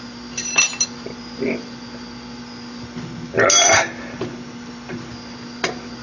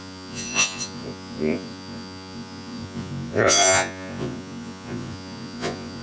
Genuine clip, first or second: first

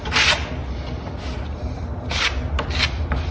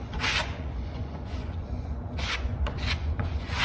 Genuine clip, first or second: first